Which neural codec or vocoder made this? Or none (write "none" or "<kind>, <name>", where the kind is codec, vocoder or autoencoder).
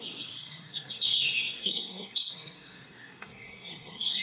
codec, SNAC